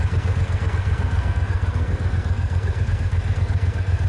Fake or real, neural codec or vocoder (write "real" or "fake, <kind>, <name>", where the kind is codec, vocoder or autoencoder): fake, codec, SNAC